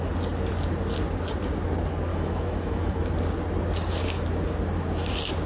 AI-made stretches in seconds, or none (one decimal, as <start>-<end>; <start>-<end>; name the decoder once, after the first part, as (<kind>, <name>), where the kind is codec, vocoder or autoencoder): 2.1-3.0 (autoencoder, DAC-VAE)